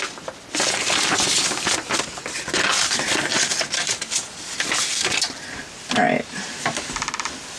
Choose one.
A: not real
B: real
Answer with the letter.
B